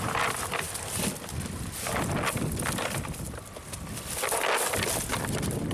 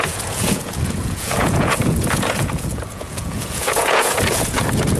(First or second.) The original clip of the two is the first